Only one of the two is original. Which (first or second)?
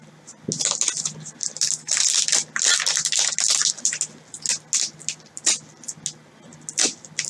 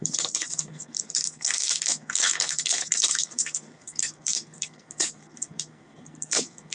first